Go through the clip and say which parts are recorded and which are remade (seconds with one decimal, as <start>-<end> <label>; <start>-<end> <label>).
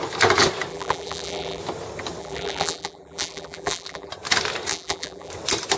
0.0-0.7 recorded; 0.7-1.6 remade; 1.6-2.2 recorded; 2.2-4.1 remade; 4.1-4.7 recorded; 4.7-5.3 remade; 5.3-5.8 recorded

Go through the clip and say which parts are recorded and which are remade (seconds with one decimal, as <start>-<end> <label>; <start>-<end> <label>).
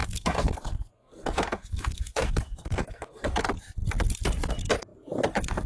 0.0-3.4 remade; 3.4-5.7 recorded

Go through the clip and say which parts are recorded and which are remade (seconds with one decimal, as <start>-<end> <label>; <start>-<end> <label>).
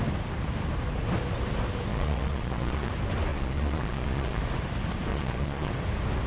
0.0-1.9 recorded; 1.9-2.9 remade; 2.9-3.3 recorded; 3.3-4.4 remade; 4.4-5.1 recorded; 5.1-5.7 remade; 5.7-6.3 recorded